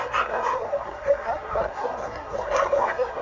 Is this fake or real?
fake